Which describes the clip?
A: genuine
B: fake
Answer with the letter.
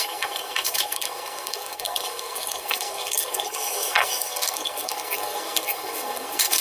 B